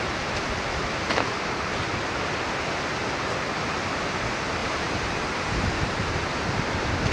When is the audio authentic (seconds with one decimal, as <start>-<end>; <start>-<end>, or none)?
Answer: 0.0-4.6; 6.1-7.1